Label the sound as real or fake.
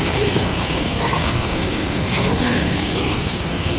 fake